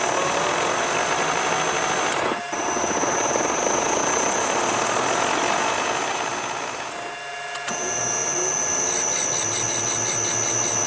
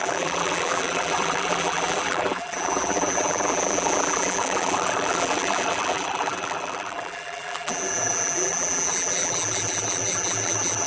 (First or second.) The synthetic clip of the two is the second